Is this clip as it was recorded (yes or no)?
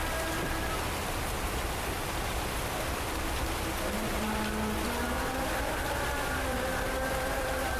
yes